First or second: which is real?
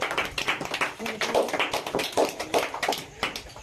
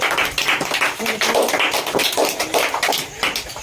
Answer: second